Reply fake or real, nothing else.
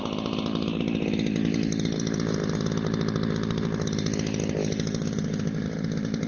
real